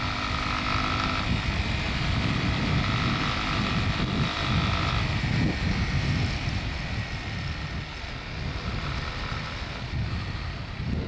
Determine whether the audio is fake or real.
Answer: real